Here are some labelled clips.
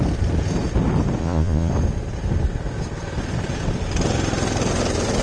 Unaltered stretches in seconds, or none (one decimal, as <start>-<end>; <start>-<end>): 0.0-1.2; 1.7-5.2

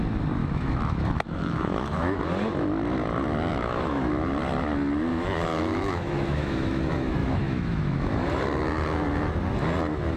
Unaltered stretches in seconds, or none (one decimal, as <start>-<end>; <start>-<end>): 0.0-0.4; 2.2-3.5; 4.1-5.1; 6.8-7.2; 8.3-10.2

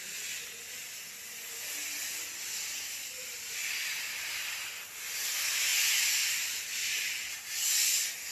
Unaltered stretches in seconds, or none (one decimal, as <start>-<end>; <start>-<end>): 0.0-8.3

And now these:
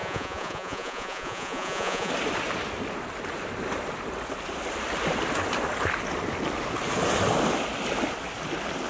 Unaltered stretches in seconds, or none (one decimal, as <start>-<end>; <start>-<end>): 2.1-8.9

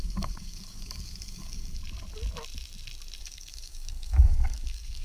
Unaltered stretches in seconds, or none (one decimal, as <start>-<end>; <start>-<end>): 1.8-3.2